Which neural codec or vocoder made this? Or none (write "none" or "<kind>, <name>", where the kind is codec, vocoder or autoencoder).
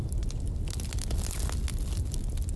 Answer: none